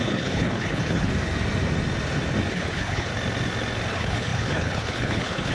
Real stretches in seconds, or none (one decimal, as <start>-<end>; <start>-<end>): 1.1-2.5; 3.1-3.9